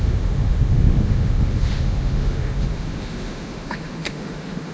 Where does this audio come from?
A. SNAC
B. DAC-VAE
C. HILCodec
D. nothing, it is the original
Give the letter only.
B